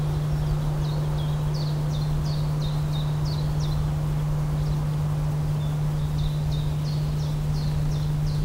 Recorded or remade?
recorded